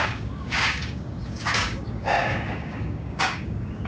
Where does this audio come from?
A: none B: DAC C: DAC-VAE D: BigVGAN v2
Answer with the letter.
B